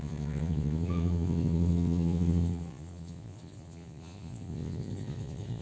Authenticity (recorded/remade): remade